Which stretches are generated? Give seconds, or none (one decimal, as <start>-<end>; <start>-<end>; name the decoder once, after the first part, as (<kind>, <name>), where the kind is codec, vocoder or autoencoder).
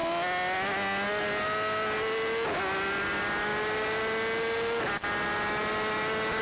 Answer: none